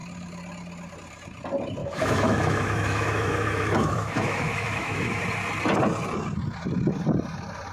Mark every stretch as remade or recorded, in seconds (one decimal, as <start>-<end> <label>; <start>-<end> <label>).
0.0-1.8 recorded; 1.8-5.2 remade; 5.2-7.7 recorded